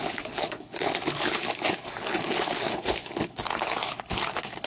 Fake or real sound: fake